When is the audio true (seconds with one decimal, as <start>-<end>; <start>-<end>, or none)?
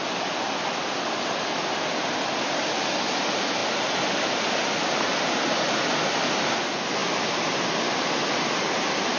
0.0-9.2